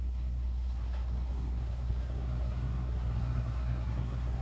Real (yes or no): no